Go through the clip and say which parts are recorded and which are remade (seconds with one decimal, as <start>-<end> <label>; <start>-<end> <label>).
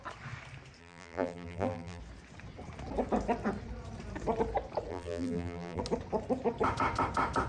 0.0-0.8 recorded; 0.8-2.0 remade; 2.0-4.9 recorded; 4.9-5.8 remade; 5.8-7.5 recorded